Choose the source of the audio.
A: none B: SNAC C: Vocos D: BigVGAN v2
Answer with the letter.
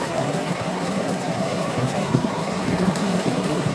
B